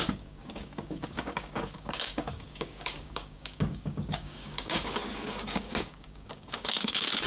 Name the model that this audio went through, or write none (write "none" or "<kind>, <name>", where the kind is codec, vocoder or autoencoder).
codec, DAC